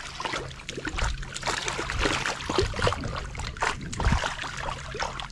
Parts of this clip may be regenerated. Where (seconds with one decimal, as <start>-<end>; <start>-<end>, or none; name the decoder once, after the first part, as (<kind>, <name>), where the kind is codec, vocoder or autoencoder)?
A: none